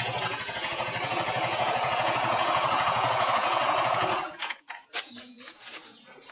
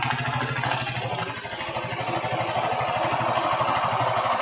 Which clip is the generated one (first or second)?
first